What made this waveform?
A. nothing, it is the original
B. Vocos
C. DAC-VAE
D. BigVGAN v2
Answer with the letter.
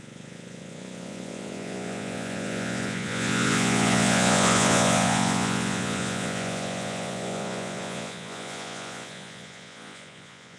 B